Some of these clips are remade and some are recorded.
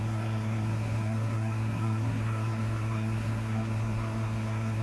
remade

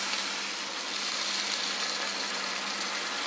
recorded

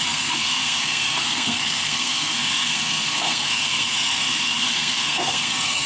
remade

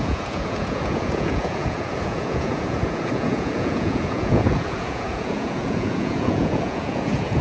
remade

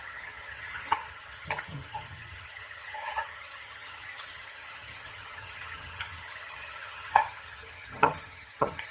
remade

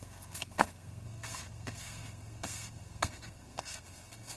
remade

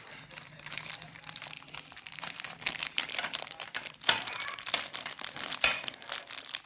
remade